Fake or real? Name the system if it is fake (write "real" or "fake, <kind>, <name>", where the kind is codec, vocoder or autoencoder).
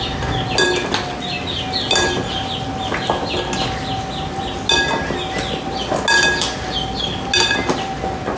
real